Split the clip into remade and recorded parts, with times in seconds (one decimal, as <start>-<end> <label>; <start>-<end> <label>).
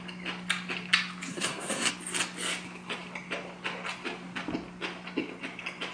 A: 0.0-1.3 recorded; 1.3-1.9 remade; 1.9-5.9 recorded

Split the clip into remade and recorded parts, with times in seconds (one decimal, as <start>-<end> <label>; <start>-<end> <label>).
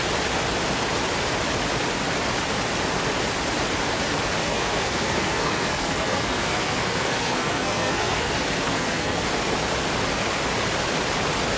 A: 0.0-4.4 recorded; 4.4-9.2 remade; 9.2-11.6 recorded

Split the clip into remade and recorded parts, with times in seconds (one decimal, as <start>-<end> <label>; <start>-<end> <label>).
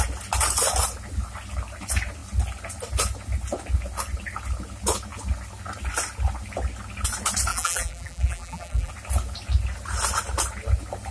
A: 0.0-7.5 recorded; 7.5-8.9 remade; 8.9-11.1 recorded